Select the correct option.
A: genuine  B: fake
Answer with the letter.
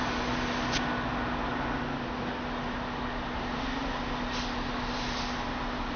A